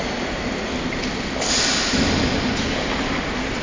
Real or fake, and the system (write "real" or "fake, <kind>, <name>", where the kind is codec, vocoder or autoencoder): real